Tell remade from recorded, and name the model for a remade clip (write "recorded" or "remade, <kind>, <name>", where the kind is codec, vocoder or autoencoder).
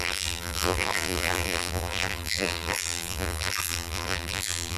remade, vocoder, BigVGAN v2